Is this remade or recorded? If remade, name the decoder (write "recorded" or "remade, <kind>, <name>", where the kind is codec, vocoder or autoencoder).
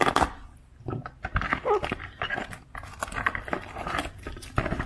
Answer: recorded